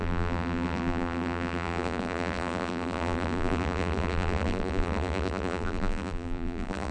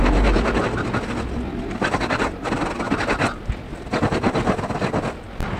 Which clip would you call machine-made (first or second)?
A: first